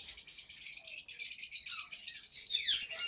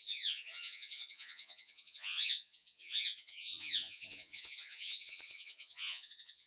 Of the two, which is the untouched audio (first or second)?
first